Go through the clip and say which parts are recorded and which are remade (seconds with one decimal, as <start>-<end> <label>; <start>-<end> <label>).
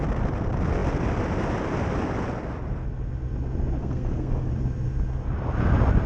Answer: 0.0-3.8 recorded; 3.8-4.5 remade; 4.5-6.1 recorded